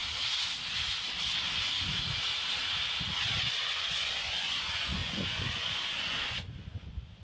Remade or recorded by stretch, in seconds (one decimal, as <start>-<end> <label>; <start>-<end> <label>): 0.0-3.4 recorded; 3.4-7.2 remade